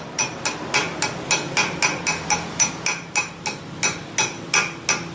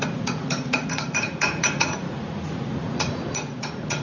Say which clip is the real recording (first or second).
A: first